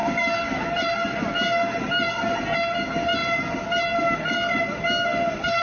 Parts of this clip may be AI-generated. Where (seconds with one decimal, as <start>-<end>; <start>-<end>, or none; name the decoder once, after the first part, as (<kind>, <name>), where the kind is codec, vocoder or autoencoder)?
none

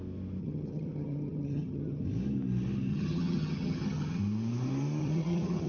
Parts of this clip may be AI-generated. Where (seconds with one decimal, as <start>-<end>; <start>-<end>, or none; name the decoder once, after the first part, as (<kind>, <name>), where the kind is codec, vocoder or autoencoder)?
0.4-2.0 (vocoder, HiFi-GAN); 2.9-4.2; 5.0-5.7

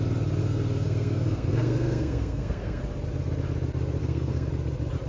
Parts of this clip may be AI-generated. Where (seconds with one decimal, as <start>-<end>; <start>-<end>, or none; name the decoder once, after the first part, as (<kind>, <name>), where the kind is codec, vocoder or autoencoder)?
0.4-2.8 (codec, SNAC); 4.0-4.5

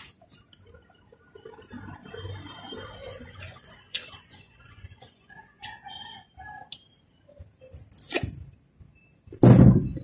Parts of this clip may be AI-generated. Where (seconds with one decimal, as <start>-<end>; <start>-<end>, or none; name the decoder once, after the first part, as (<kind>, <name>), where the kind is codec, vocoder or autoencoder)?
3.0-6.3 (vocoder, Vocos)